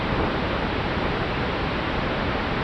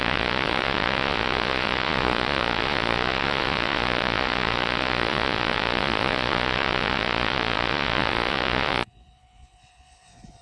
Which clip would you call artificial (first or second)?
second